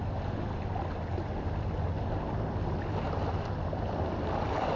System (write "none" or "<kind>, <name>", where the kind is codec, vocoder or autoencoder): none